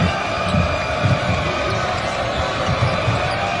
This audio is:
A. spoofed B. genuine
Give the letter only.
B